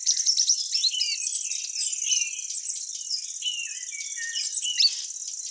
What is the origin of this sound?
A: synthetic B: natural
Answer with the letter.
B